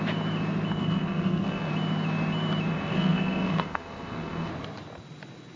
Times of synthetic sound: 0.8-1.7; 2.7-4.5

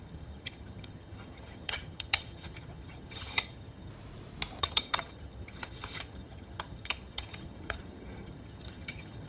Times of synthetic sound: 0.0-3.9; 4.6-9.3

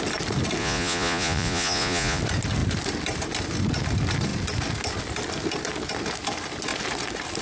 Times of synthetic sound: 0.6-2.2

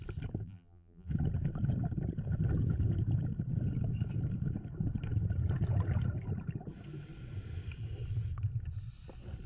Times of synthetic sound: 0.4-1.1

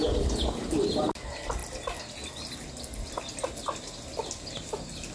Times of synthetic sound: none